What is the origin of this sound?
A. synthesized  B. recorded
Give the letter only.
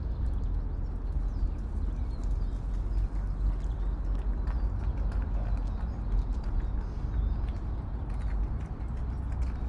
B